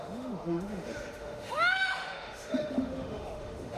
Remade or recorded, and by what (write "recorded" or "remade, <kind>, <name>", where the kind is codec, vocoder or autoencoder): remade, autoencoder, DAC-VAE